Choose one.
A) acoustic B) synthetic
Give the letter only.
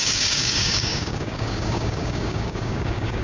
B